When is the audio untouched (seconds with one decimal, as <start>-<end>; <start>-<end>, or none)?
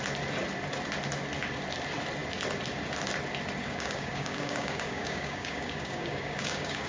0.0-3.6